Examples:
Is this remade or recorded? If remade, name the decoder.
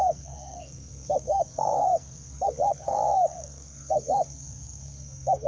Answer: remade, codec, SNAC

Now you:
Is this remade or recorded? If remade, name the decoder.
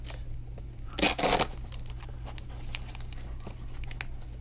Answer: recorded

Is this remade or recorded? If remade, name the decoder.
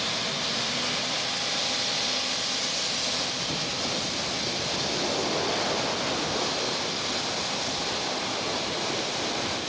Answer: recorded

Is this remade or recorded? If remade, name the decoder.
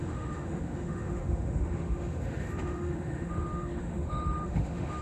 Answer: remade, autoencoder, DAC-VAE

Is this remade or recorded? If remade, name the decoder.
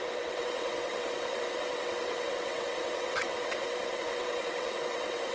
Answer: remade, vocoder, WaveNeXt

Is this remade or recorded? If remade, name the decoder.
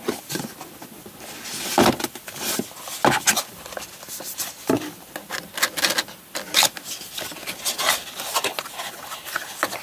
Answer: recorded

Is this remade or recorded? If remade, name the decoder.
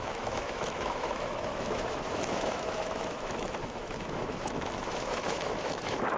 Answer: remade, autoencoder, DAC-VAE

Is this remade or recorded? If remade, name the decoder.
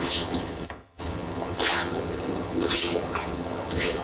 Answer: remade, vocoder, HiFi-GAN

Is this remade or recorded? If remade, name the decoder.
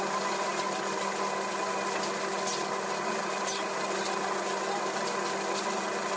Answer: recorded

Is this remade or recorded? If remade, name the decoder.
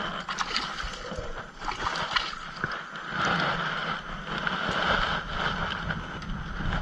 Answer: recorded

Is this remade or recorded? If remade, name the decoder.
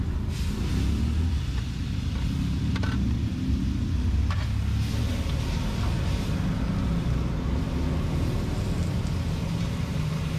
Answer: recorded